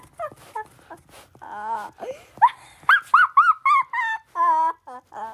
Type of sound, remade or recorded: recorded